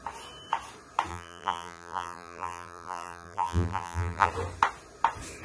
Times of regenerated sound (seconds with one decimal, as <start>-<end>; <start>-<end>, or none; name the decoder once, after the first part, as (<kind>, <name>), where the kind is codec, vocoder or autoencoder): 1.1-4.3 (vocoder, BigVGAN v2)